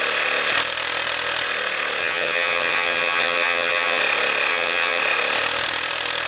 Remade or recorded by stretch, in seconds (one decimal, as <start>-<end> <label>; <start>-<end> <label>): 0.0-2.0 recorded; 2.0-4.0 remade; 4.0-4.5 recorded; 4.5-5.0 remade; 5.0-6.3 recorded